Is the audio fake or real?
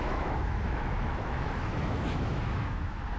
fake